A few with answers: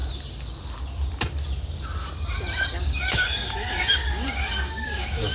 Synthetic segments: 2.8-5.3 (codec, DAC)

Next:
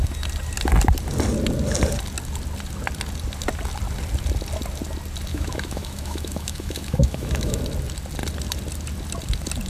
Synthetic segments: 5.3-7.6 (autoencoder, DAC-VAE)

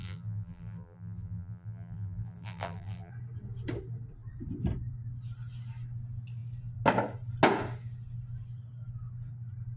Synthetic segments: 0.0-3.1 (vocoder, BigVGAN v2)

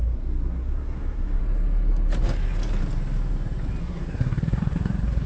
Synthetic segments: 0.0-1.4 (codec, SNAC); 3.8-5.3

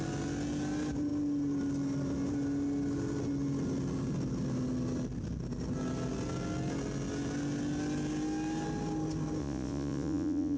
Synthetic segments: 9.4-10.6 (vocoder, Vocos)

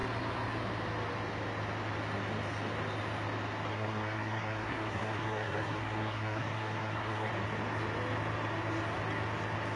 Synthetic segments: 3.7-7.3 (codec, SNAC)

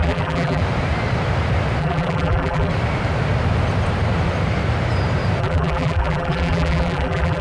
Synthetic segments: 0.0-0.6 (vocoder, BigVGAN v2); 1.8-2.7; 5.4-7.4

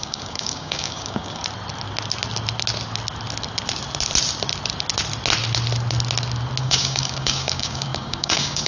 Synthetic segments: 0.0-1.4 (codec, DAC); 6.6-8.7